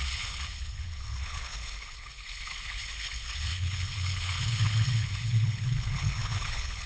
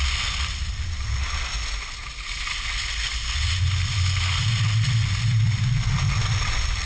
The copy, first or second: first